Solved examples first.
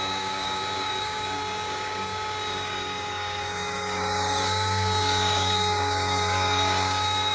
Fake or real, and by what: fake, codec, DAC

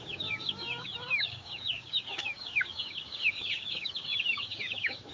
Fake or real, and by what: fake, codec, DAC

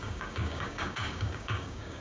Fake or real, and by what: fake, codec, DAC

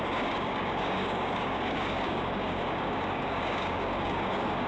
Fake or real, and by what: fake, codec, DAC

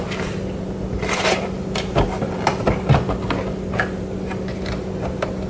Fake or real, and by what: real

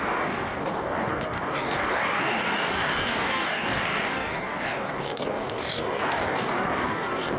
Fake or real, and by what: fake, codec, DAC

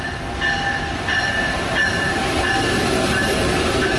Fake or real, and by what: real